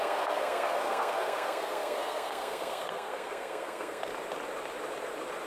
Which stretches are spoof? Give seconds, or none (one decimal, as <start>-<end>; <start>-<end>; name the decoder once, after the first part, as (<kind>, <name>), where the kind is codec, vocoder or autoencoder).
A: 0.0-4.1 (codec, SNAC)